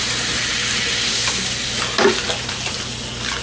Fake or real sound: real